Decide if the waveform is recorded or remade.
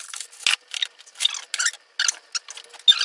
recorded